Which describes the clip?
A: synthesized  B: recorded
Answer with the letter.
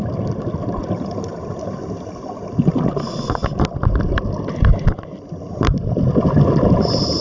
B